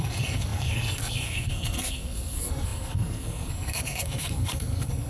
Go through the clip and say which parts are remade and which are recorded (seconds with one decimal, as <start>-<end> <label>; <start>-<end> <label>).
0.0-5.1 remade